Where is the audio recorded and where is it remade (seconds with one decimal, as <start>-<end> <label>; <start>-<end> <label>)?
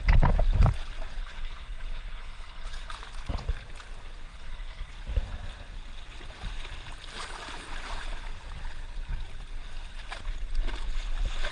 0.0-1.2 recorded; 1.2-2.9 remade; 2.9-4.3 recorded; 4.3-4.9 remade; 4.9-11.5 recorded